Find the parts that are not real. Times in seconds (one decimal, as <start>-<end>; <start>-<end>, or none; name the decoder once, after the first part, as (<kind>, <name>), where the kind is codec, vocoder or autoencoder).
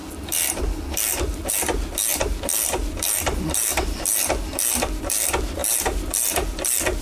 none